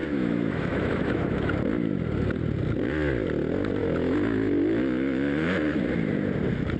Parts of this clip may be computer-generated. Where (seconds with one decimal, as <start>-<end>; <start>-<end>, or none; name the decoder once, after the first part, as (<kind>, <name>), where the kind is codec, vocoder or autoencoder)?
0.0-1.5 (autoencoder, DAC-VAE); 3.8-5.8